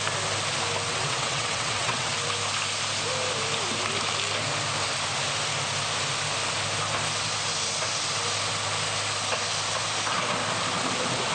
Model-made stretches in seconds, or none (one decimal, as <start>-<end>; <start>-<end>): 0.9-2.1